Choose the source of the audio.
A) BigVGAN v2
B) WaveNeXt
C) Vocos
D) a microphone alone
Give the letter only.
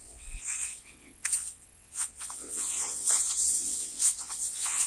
B